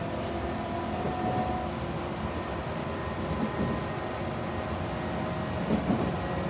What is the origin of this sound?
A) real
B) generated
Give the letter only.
A